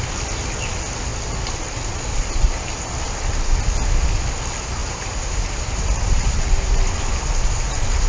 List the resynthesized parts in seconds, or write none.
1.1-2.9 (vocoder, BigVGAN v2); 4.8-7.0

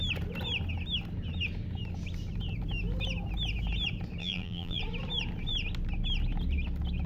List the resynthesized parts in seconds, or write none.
4.2-4.8 (vocoder, BigVGAN v2)

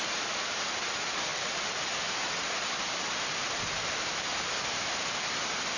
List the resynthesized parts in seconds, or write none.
none